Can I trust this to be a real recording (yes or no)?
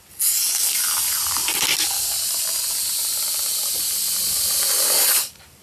yes